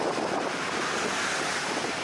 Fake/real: real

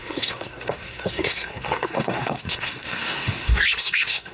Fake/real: fake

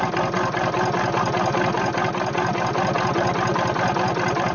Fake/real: real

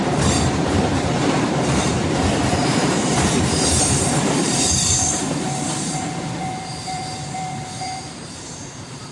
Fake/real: fake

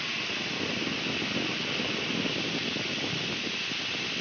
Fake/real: real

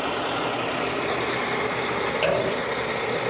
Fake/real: real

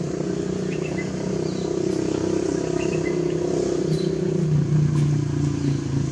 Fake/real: real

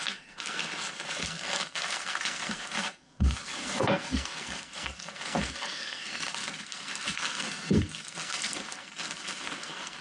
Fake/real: fake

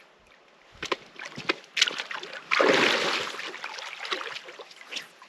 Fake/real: real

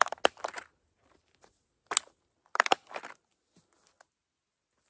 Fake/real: real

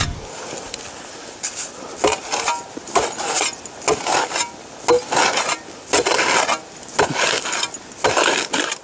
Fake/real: real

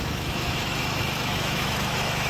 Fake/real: fake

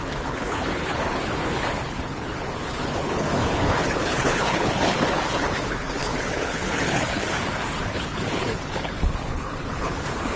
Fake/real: fake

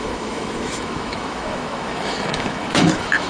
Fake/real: fake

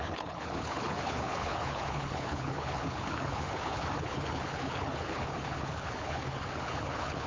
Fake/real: fake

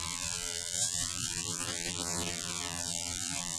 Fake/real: fake